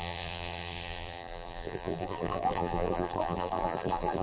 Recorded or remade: remade